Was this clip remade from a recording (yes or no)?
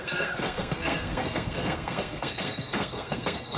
yes